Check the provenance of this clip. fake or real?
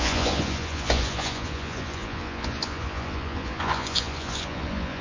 fake